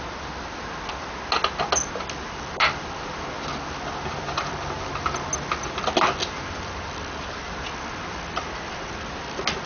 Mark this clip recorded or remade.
recorded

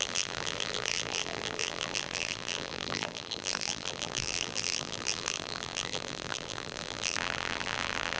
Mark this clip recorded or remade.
remade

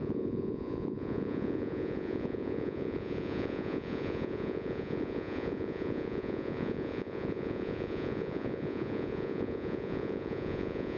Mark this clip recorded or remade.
remade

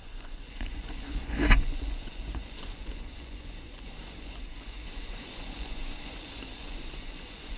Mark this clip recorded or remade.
remade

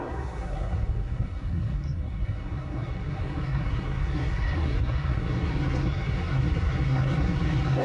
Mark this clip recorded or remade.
remade